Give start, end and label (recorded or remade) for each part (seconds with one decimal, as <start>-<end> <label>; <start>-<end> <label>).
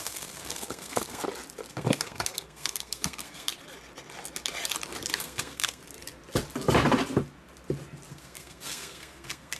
0.0-1.2 remade; 1.2-1.7 recorded; 1.7-3.5 remade; 3.5-5.1 recorded; 5.1-5.8 remade; 5.8-8.1 recorded; 8.1-9.6 remade